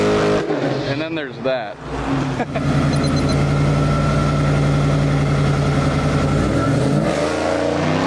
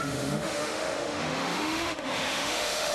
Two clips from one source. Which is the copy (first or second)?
second